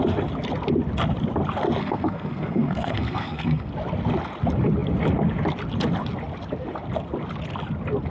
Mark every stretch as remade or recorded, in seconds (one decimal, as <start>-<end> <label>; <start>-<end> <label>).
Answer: 0.0-1.8 recorded; 1.8-3.7 remade; 3.7-8.1 recorded